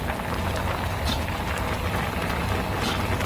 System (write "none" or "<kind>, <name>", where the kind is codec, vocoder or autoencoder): none